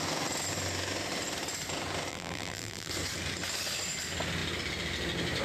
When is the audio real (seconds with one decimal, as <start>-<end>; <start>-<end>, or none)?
0.0-2.1; 2.9-5.4